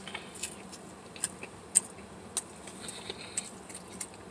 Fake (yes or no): no